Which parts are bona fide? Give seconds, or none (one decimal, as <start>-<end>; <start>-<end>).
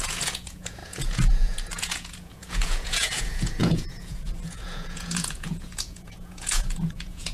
none